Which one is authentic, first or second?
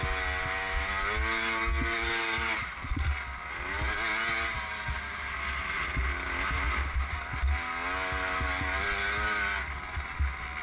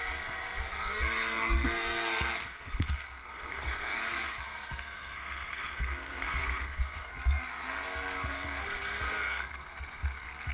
first